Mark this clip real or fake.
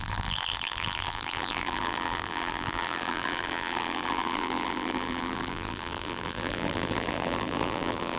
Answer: fake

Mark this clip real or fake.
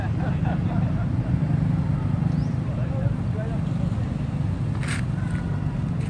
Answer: real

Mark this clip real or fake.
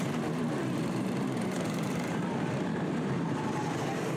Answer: fake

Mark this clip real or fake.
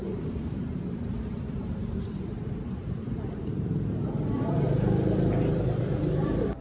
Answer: fake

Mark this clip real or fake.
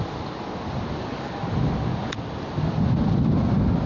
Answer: real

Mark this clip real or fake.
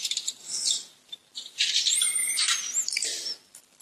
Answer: fake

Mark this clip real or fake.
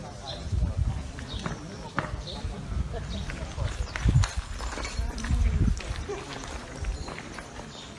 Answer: fake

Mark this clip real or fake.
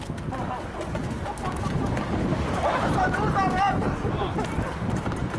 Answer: real